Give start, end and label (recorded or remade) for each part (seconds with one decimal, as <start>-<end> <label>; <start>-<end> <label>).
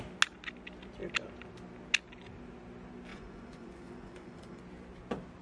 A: 0.0-3.1 recorded; 3.1-4.6 remade; 4.6-5.4 recorded